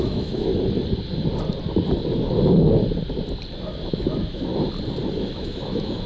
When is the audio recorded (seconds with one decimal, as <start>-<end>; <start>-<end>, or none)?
0.5-3.8; 4.5-5.1